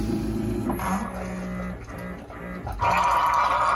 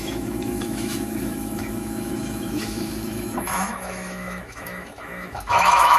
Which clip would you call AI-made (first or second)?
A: second